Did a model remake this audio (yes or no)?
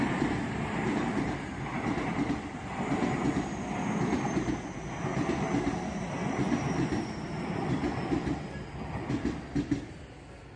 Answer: no